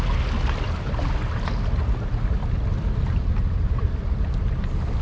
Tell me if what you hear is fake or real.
real